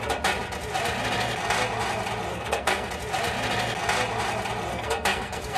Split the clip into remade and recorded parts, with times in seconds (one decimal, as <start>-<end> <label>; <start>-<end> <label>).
0.0-2.3 recorded; 2.3-2.9 remade; 2.9-4.7 recorded; 4.7-5.6 remade